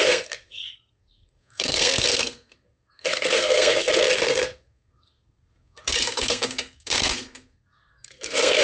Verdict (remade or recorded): remade